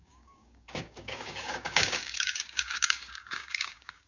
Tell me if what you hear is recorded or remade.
remade